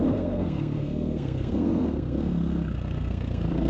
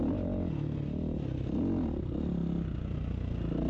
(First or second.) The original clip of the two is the second